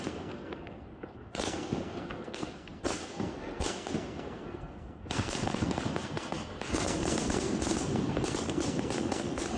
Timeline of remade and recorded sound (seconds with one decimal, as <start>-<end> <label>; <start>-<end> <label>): 0.0-9.6 remade